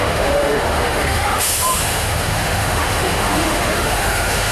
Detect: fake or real fake